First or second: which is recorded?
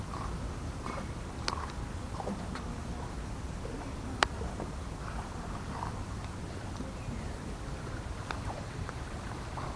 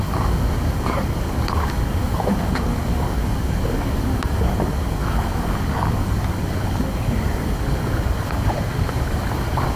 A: first